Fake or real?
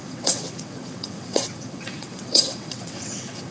fake